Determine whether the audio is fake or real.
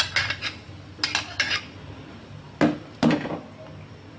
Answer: real